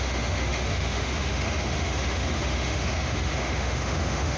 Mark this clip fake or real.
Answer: fake